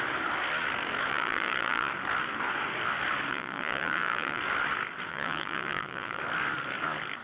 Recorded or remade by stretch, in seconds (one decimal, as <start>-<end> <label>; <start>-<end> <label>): 0.0-1.1 recorded; 1.1-1.9 remade; 1.9-3.3 recorded; 3.3-4.4 remade; 4.4-5.1 recorded; 5.1-6.2 remade; 6.2-7.2 recorded